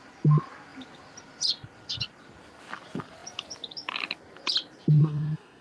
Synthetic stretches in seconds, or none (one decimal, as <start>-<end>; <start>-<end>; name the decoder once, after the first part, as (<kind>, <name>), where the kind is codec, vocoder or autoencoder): 5.0-5.6 (codec, SNAC)